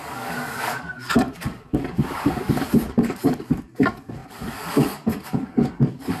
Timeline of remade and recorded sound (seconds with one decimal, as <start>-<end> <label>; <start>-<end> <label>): 0.0-6.2 remade